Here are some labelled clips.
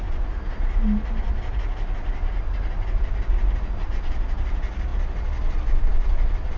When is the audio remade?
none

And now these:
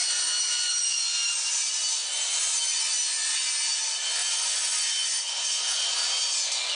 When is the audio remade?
0.0-1.1; 4.2-6.0